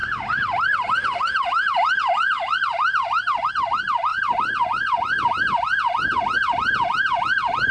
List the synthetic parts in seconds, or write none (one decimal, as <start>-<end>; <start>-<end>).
4.1-5.3